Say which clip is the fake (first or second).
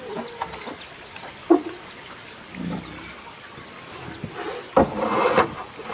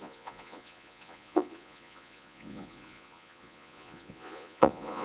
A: second